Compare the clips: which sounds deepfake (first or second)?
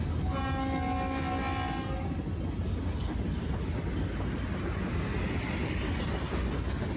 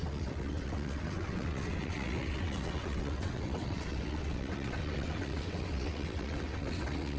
second